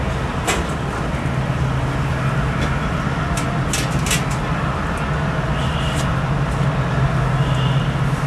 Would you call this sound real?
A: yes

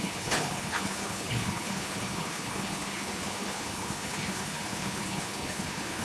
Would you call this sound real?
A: no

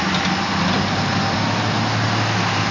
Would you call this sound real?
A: yes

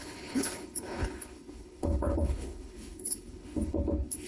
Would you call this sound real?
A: no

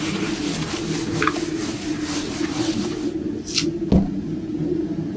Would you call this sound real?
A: yes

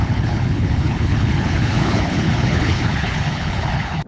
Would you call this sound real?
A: no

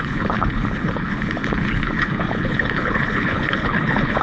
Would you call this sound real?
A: no